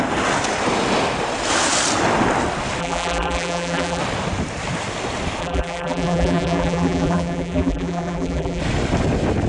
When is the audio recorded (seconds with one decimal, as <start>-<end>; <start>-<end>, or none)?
0.0-2.8; 4.0-5.4; 8.6-9.5